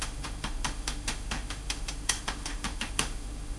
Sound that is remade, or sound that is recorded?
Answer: remade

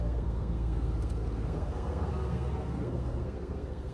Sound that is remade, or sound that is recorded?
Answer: remade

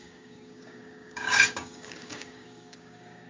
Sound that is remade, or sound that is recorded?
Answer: remade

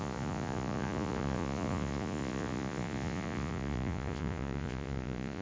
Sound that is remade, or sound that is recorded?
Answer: remade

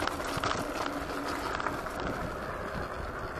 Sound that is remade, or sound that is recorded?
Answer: recorded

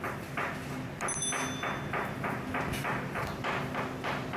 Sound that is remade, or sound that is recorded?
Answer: recorded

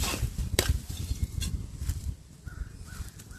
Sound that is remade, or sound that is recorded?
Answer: remade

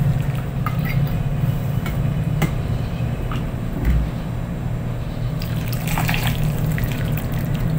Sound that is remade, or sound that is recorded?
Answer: remade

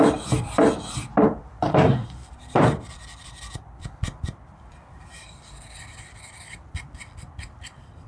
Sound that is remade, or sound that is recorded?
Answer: remade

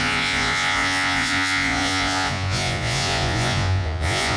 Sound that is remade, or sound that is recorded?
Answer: remade